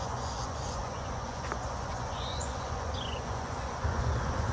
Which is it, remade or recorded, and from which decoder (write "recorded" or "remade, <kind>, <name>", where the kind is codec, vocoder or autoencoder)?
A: remade, vocoder, Vocos